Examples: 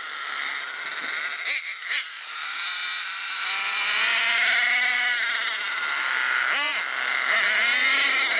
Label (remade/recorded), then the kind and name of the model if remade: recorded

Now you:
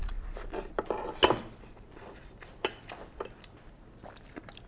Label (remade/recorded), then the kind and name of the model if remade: recorded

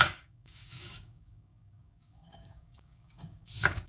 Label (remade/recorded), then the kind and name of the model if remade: remade, codec, DAC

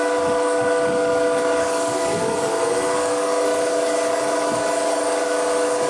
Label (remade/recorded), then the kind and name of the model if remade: remade, codec, DAC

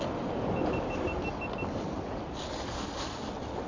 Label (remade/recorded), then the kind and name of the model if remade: recorded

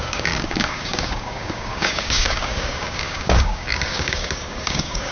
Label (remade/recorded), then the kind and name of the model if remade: remade, codec, DAC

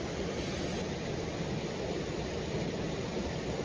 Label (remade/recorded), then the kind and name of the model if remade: recorded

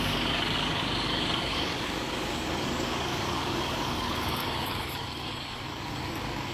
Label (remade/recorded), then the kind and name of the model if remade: remade, codec, DAC